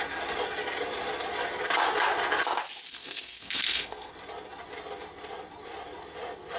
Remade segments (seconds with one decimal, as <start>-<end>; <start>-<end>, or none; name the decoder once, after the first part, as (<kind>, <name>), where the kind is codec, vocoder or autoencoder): 2.9-4.1 (codec, SNAC)